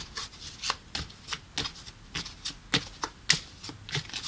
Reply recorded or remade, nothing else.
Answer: recorded